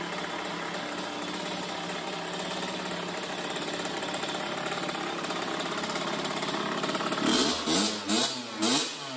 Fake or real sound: real